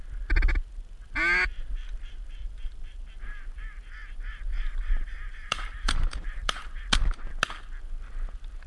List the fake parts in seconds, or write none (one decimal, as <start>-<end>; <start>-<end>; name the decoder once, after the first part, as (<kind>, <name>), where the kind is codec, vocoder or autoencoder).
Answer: 2.4-3.0 (vocoder, BigVGAN v2); 4.5-6.9